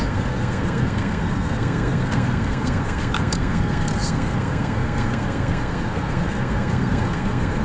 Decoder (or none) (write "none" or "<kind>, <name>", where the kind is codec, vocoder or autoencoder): codec, SNAC